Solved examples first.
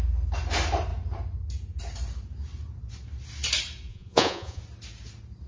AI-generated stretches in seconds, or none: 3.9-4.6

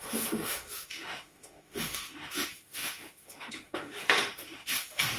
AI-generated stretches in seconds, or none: 0.0-5.2

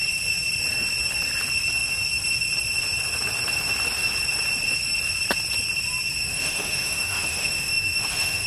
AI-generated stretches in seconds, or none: 6.2-8.5